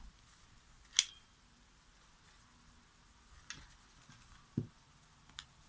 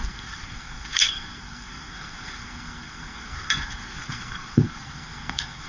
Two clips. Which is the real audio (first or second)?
first